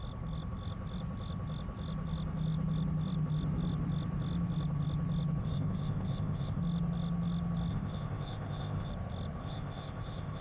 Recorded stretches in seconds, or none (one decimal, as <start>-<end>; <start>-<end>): 0.0-5.4; 6.6-7.7; 8.9-9.4

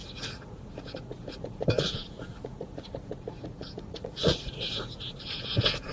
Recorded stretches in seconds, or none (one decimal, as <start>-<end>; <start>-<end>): none

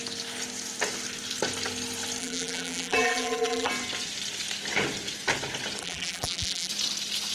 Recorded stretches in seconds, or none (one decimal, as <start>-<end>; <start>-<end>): 0.0-2.2; 3.7-5.8; 6.7-7.3

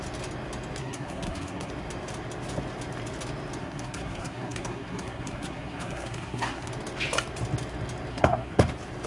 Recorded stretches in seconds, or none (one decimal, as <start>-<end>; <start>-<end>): 0.0-0.8; 1.7-3.6; 6.7-8.1; 8.7-9.1

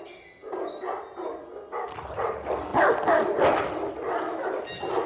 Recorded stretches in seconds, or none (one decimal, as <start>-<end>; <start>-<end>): 0.0-5.1

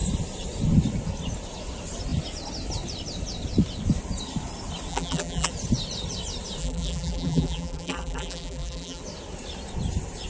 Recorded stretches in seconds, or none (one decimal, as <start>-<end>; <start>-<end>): 0.0-4.9; 5.5-6.6; 9.0-10.3